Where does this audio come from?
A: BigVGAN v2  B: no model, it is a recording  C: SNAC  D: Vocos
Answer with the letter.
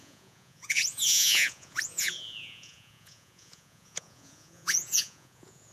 D